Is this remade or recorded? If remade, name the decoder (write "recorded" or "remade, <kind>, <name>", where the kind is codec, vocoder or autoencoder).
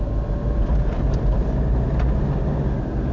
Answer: recorded